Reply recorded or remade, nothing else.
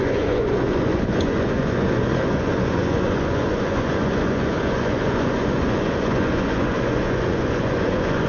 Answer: remade